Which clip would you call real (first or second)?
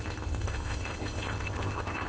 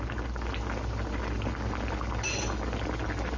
second